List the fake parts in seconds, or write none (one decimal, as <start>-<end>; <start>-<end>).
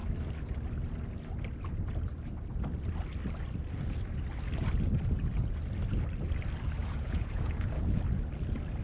6.8-7.8